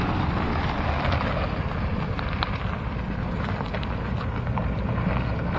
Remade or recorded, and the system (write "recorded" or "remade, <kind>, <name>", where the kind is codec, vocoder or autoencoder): recorded